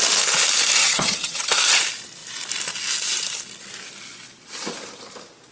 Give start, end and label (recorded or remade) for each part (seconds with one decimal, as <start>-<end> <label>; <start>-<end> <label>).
0.0-0.8 recorded; 0.8-1.5 remade; 1.5-5.5 recorded